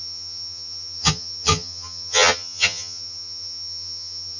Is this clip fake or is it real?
fake